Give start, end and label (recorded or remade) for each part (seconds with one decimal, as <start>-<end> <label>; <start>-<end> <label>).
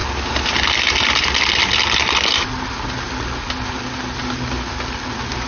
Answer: 0.0-5.5 recorded